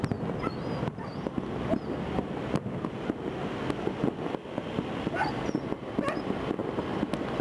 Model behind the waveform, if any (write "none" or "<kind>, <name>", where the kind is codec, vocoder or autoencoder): none